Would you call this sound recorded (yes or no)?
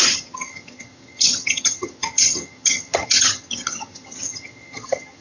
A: no